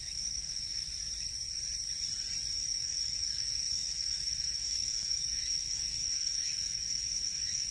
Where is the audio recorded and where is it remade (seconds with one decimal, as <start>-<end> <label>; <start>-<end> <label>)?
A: 0.0-0.9 remade; 0.9-2.5 recorded; 2.5-7.7 remade